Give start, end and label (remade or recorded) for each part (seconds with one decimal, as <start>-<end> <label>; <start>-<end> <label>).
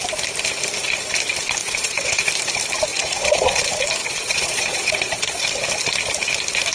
0.0-1.6 recorded; 1.6-2.3 remade; 2.3-2.9 recorded; 2.9-3.6 remade; 3.6-4.0 recorded; 4.0-5.4 remade; 5.4-6.7 recorded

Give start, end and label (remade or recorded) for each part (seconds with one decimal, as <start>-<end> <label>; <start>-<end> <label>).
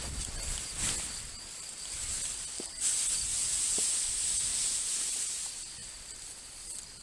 0.0-3.3 recorded; 3.3-4.0 remade; 4.0-4.5 recorded; 4.5-5.1 remade; 5.1-7.0 recorded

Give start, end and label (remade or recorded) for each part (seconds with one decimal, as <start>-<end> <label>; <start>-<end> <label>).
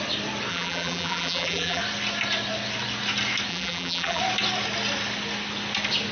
0.0-0.5 recorded; 0.5-1.8 remade; 1.8-3.5 recorded; 3.5-4.2 remade; 4.2-6.1 recorded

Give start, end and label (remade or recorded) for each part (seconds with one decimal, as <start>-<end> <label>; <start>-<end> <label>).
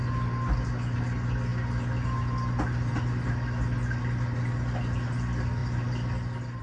0.0-6.6 recorded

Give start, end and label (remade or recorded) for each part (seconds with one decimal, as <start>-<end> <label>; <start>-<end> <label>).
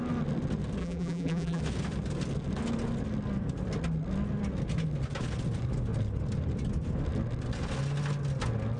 0.0-0.8 recorded; 0.8-1.6 remade; 1.6-8.8 recorded